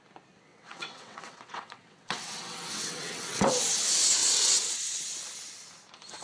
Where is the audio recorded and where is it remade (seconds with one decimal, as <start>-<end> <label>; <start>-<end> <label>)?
0.0-0.5 recorded; 0.5-3.5 remade; 3.5-4.2 recorded; 4.2-5.0 remade; 5.0-6.2 recorded